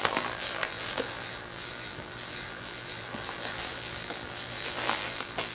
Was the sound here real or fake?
fake